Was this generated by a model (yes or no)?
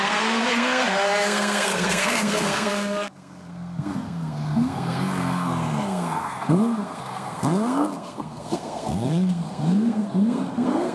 yes